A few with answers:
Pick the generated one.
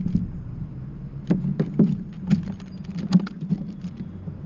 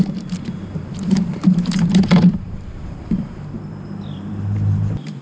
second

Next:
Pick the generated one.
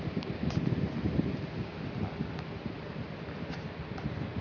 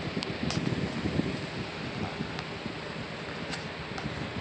first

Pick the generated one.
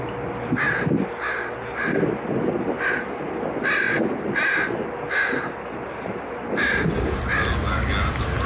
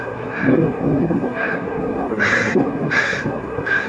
second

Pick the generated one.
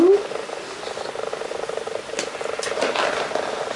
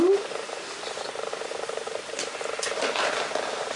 second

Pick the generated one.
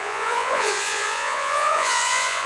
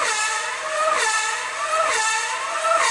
first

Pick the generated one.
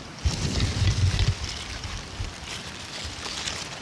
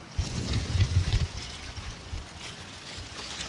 second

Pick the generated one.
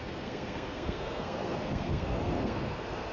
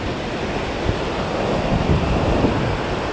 first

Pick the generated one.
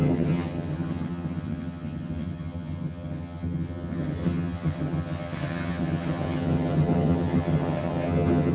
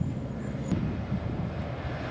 first